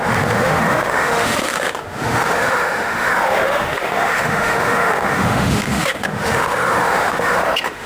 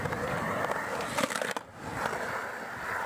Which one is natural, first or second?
second